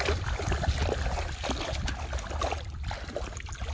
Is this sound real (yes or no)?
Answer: yes